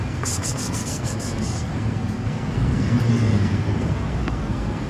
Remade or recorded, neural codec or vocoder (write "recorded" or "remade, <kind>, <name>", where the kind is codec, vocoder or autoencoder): remade, codec, SNAC